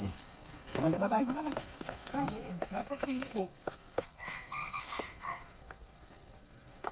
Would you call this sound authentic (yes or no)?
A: no